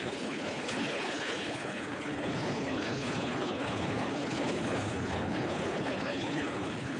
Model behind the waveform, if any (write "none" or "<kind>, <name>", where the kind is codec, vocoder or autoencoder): codec, HILCodec